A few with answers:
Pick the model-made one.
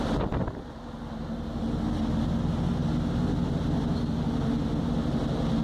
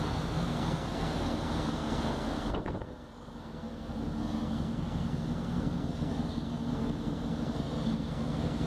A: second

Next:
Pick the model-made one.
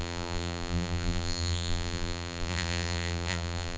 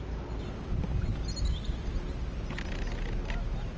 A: first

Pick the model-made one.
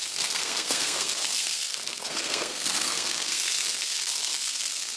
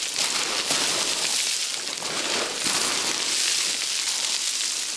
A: first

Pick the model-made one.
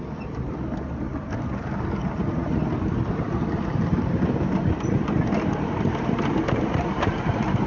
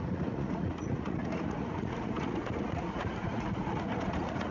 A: second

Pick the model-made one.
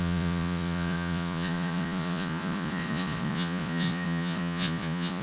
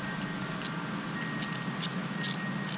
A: first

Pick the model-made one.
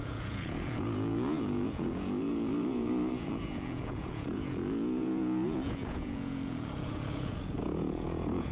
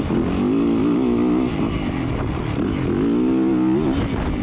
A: first